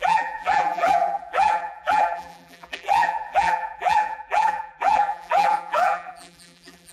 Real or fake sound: fake